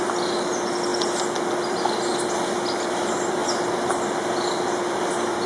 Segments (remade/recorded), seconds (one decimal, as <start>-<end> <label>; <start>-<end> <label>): 0.0-5.5 recorded